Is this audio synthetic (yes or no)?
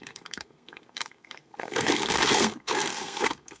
yes